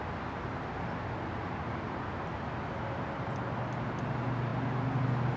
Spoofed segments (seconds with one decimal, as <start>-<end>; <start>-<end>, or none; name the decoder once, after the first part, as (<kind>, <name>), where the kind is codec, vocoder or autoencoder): none